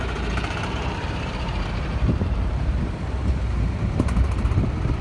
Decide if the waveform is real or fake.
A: fake